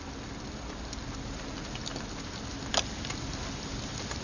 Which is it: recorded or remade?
recorded